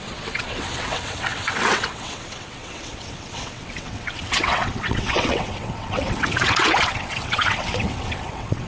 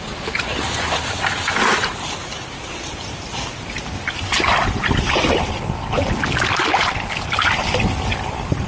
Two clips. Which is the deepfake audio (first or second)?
first